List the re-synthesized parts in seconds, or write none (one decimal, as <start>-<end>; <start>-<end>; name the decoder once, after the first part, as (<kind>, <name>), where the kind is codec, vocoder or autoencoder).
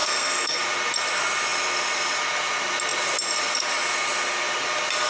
0.0-0.6 (codec, SNAC)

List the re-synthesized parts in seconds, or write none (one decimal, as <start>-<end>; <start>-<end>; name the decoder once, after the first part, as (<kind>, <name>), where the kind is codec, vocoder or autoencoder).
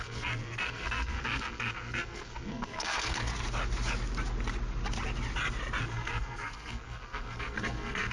0.0-3.3 (codec, SNAC); 5.8-8.1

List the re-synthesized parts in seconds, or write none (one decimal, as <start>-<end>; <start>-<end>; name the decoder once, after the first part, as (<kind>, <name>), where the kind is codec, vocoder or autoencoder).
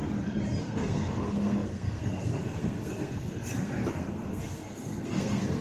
0.6-5.6 (codec, SNAC)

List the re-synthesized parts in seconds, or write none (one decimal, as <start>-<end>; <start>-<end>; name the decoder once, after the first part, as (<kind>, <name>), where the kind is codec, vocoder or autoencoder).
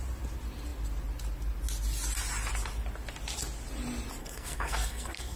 4.2-5.4 (codec, SNAC)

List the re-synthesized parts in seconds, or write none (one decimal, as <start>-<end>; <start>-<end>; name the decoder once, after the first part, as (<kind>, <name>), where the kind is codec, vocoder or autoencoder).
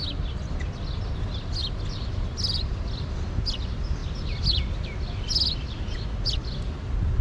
none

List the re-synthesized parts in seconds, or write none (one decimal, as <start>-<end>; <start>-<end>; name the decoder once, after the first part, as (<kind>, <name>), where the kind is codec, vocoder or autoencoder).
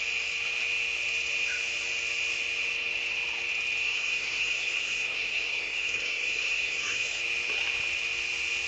3.8-7.2 (codec, SNAC)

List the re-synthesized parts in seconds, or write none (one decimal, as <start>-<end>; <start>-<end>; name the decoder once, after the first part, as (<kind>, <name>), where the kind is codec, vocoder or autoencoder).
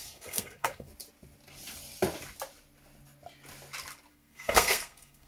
0.0-0.9 (codec, SNAC); 4.1-5.3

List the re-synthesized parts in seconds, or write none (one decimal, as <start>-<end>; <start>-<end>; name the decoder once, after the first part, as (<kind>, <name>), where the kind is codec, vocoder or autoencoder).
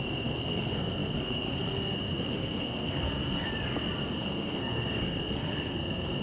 0.0-3.5 (codec, SNAC); 4.1-6.2